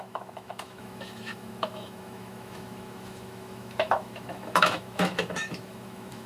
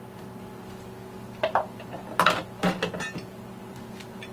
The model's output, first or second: first